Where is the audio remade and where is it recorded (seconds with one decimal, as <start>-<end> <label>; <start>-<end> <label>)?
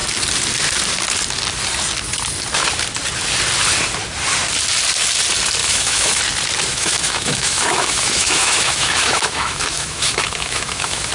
0.0-5.6 recorded; 5.6-6.2 remade; 6.2-6.7 recorded; 6.7-11.1 remade